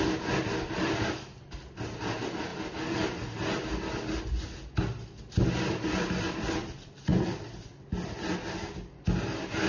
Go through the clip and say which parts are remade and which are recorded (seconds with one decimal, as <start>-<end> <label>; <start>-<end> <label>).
0.0-9.7 recorded